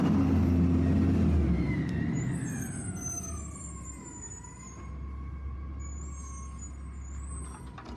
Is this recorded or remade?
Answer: recorded